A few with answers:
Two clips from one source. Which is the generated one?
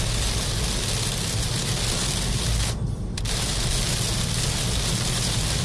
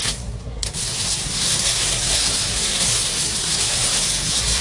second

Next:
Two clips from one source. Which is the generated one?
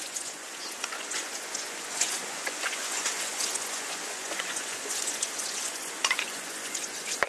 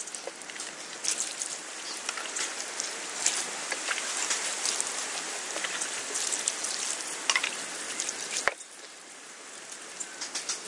first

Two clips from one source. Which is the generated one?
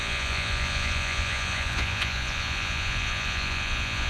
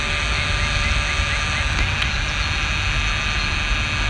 first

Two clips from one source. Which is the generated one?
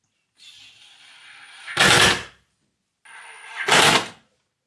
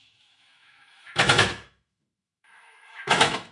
second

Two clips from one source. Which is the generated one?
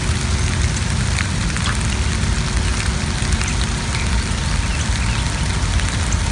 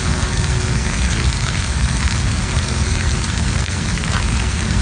second